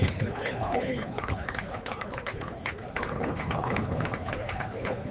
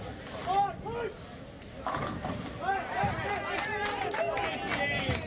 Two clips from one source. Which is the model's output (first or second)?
first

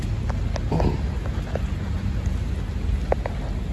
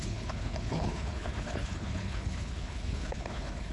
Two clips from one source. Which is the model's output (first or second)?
second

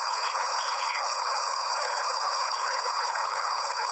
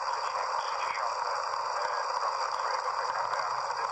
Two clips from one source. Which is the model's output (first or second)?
first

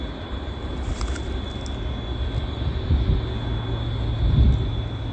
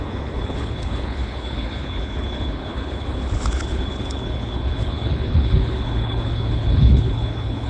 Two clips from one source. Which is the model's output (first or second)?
second